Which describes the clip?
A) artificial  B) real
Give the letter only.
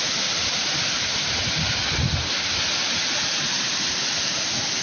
B